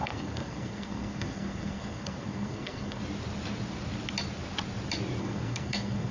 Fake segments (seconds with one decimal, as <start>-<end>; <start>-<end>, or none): 0.0-3.0; 5.2-6.1